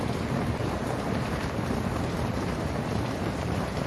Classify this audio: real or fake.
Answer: fake